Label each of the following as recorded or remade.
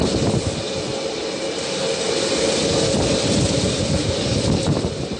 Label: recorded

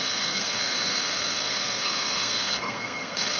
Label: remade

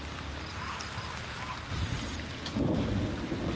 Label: recorded